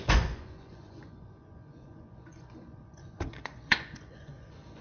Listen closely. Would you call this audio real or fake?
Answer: fake